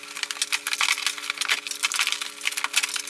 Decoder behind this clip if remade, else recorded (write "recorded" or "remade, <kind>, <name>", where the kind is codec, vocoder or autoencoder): recorded